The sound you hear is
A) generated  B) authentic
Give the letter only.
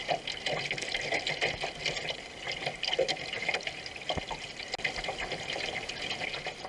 B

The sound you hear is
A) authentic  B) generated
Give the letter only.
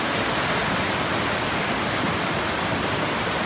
A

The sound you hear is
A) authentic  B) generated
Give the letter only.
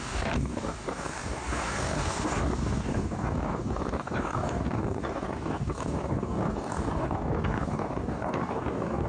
B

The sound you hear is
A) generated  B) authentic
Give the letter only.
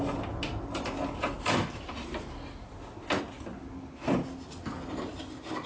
B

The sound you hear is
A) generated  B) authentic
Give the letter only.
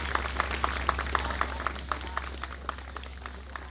B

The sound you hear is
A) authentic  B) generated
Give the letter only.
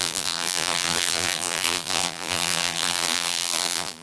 B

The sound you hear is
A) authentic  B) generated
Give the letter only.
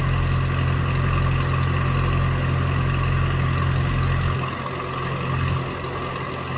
A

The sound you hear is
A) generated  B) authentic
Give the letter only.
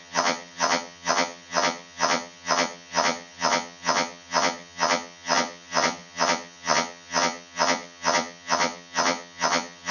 A